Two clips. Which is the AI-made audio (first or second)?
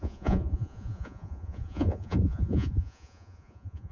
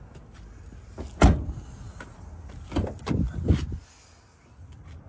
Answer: first